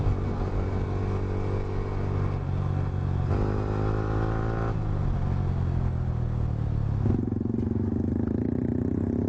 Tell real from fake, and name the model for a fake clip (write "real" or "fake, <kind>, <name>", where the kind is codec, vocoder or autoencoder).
real